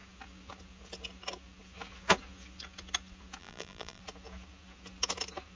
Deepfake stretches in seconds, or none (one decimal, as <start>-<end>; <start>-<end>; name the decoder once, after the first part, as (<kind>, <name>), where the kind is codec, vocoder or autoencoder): 3.4-4.0 (vocoder, BigVGAN v2)